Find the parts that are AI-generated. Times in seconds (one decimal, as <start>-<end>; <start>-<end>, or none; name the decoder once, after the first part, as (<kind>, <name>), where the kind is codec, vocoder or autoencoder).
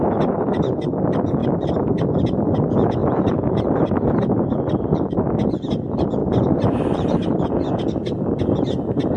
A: 1.4-2.2 (vocoder, BigVGAN v2); 3.0-5.3; 6.2-7.3